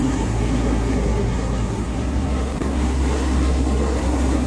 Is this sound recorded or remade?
remade